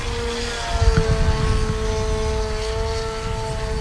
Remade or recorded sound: recorded